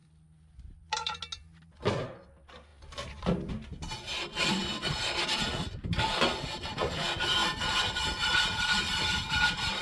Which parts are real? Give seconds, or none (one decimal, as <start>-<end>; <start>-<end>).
0.0-9.8